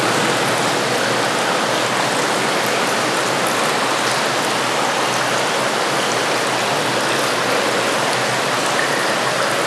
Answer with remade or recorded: recorded